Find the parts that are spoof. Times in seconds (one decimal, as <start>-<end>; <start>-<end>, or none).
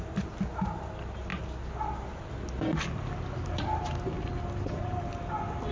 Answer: none